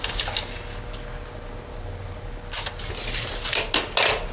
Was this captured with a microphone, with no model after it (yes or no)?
yes